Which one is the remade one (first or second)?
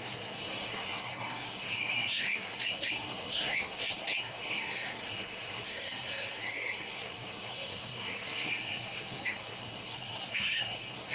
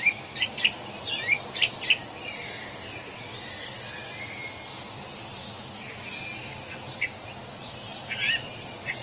first